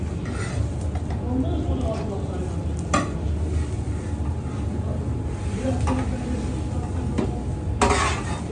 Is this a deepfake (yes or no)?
no